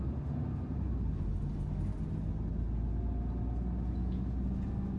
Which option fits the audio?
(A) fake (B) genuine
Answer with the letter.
B